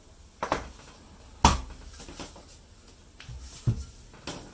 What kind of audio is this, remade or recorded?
recorded